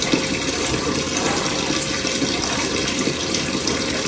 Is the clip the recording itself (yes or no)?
yes